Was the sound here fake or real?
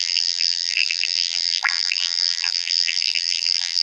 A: fake